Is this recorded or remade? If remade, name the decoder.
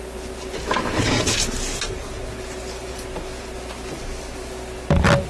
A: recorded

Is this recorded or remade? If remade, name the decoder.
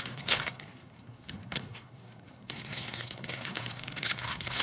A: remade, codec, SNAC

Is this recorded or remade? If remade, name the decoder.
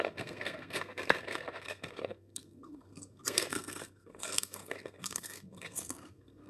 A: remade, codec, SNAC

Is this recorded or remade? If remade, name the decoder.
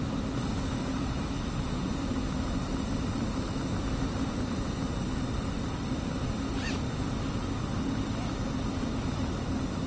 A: recorded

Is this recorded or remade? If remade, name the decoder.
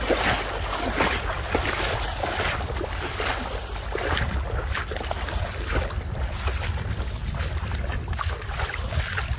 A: recorded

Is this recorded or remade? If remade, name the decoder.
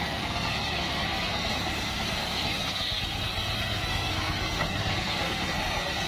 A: remade, codec, SNAC